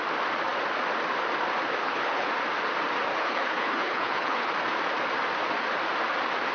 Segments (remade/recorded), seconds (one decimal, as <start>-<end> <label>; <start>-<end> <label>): 0.0-1.8 recorded; 1.8-2.3 remade; 2.3-3.1 recorded; 3.1-4.5 remade; 4.5-6.5 recorded